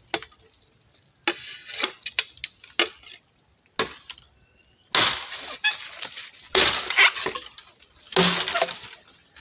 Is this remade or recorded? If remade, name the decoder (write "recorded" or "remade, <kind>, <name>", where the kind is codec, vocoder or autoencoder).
recorded